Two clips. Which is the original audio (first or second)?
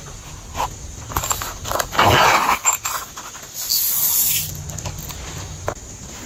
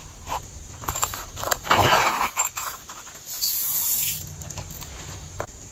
first